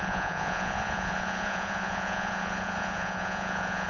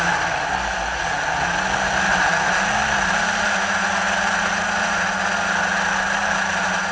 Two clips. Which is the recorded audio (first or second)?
second